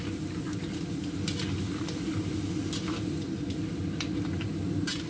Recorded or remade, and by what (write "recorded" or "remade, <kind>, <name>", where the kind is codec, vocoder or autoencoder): recorded